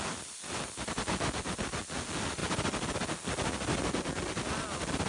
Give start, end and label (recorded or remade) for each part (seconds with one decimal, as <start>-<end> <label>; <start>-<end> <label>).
0.0-5.1 recorded